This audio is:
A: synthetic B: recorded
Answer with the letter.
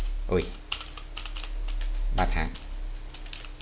B